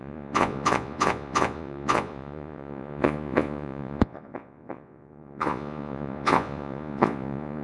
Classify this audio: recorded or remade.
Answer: remade